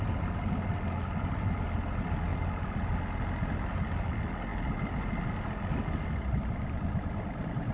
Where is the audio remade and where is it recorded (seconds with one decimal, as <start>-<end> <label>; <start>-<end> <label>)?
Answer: 0.0-7.7 recorded